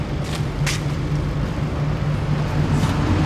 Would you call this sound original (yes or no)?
yes